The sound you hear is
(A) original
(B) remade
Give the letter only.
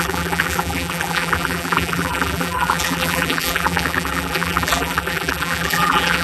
B